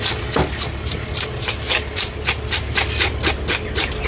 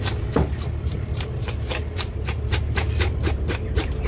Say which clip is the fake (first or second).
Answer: second